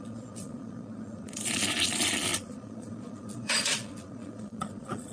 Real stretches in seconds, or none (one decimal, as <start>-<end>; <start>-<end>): none

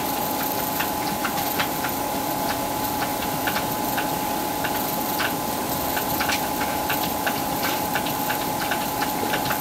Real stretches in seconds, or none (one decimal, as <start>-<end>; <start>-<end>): 0.0-3.1; 3.7-5.6; 7.9-9.6

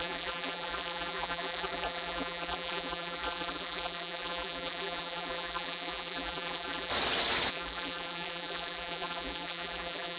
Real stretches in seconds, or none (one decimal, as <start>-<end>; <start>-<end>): 6.9-7.5

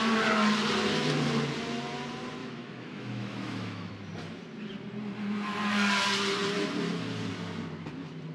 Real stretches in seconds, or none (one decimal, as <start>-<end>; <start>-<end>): 0.0-2.4; 3.9-8.3

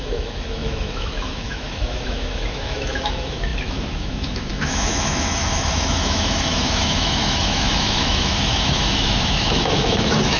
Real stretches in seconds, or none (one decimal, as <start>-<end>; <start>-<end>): none

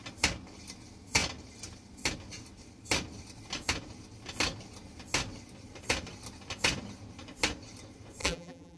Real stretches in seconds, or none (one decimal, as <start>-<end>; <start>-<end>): 0.0-8.2

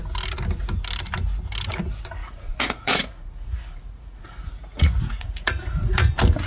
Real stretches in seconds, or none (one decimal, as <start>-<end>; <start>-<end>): 0.0-2.2; 6.1-6.5

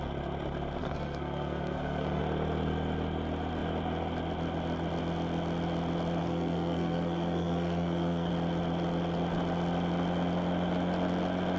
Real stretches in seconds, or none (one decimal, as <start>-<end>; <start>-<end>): 0.0-0.8; 2.2-6.2; 8.3-11.6